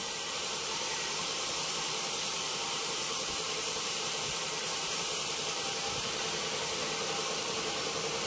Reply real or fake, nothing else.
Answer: fake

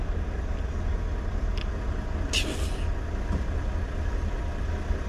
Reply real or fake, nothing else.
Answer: real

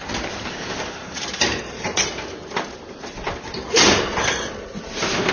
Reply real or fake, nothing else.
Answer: real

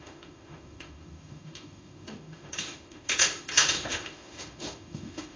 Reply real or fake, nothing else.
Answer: fake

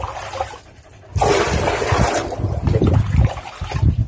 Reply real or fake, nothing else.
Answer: real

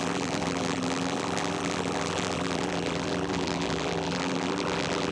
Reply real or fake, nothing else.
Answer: fake